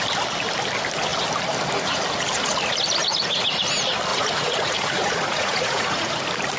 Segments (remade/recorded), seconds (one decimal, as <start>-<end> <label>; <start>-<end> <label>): 0.0-3.0 recorded; 3.0-3.6 remade; 3.6-4.1 recorded; 4.1-6.1 remade; 6.1-6.6 recorded